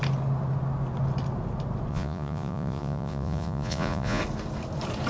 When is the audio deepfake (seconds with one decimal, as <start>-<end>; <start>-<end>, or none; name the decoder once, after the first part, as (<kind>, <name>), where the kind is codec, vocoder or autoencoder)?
1.9-4.2 (vocoder, Vocos)